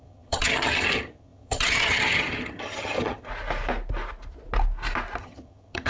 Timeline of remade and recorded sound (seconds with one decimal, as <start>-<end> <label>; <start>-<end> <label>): 0.0-3.3 remade; 3.3-5.2 recorded; 5.2-5.9 remade